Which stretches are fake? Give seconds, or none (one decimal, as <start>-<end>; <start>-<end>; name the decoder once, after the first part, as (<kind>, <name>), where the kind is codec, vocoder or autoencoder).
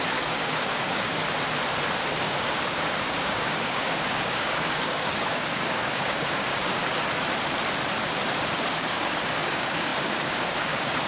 0.0-1.2 (codec, DAC); 2.1-6.8; 8.7-11.1